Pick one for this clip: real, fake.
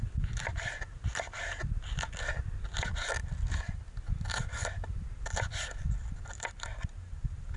real